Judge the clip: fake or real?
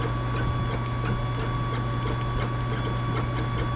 real